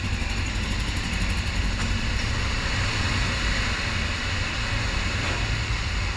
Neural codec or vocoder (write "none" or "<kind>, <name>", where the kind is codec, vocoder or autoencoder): none